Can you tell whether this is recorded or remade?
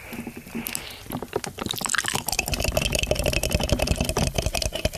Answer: recorded